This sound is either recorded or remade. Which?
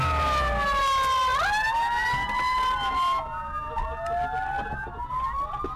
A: recorded